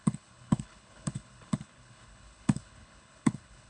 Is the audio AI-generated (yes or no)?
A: yes